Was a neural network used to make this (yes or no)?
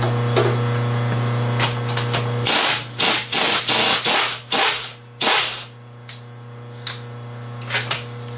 no